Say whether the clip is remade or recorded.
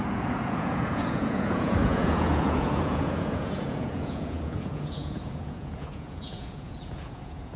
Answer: remade